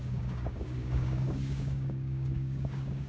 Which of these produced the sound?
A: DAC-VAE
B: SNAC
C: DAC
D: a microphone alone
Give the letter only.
C